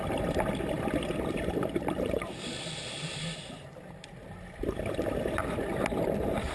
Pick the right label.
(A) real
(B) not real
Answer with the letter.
B